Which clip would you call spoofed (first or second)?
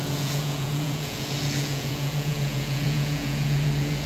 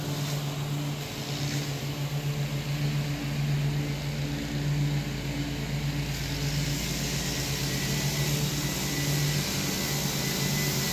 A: first